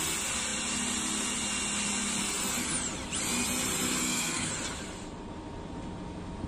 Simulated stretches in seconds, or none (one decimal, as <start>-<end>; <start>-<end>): 4.0-4.5